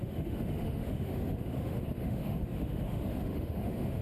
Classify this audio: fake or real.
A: fake